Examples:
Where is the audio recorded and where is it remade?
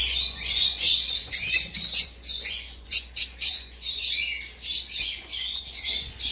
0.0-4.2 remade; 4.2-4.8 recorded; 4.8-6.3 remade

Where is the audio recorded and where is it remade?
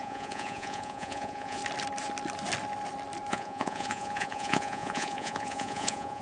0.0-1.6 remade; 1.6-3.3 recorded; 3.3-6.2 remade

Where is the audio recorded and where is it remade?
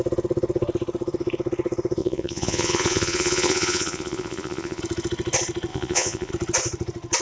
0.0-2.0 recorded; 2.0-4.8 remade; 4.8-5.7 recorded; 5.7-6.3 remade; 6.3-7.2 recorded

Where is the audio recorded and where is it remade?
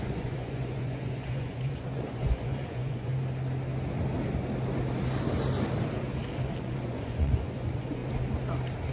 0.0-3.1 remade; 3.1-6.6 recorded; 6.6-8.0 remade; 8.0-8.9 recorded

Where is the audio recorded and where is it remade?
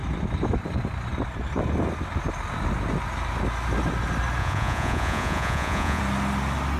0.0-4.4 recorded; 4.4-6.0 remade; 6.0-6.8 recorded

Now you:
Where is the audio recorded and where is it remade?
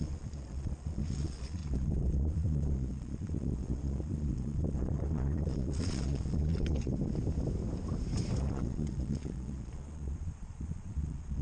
0.0-6.9 remade; 6.9-8.4 recorded; 8.4-11.4 remade